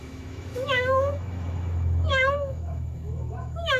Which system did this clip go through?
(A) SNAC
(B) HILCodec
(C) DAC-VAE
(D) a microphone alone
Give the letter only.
C